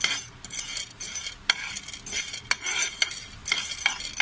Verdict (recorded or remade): recorded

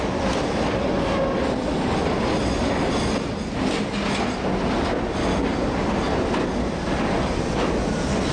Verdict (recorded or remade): recorded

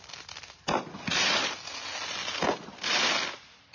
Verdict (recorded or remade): recorded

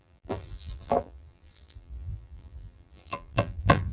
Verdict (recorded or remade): remade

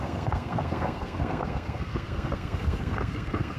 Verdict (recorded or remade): remade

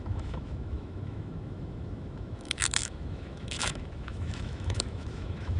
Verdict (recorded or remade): remade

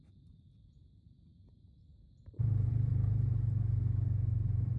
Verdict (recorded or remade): remade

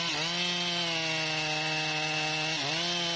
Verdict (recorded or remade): recorded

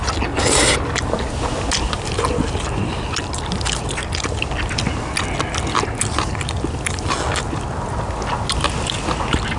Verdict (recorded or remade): recorded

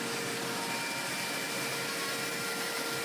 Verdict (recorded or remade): recorded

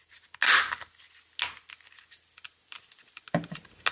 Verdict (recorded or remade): recorded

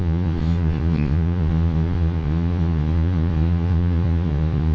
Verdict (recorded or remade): remade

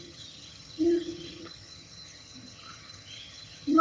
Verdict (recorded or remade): remade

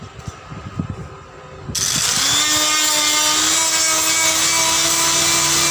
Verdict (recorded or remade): recorded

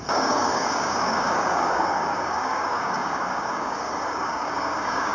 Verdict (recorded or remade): remade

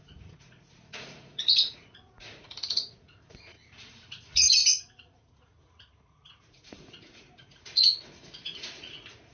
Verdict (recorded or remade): remade